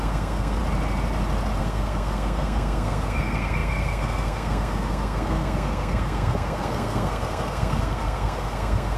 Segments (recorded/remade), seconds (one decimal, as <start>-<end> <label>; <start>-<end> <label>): 0.0-0.6 remade; 0.6-1.6 recorded; 1.6-9.0 remade